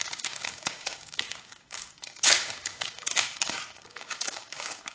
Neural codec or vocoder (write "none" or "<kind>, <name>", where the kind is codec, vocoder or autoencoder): codec, DAC